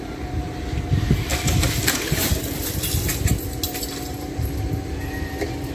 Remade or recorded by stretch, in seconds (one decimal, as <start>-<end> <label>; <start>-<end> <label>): 0.0-4.1 recorded; 4.1-4.7 remade; 4.7-5.7 recorded